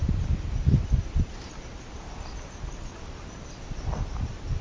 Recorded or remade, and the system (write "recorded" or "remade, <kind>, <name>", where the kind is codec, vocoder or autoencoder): recorded